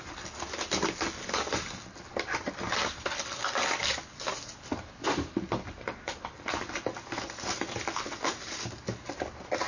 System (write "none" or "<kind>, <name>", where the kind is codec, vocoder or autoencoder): none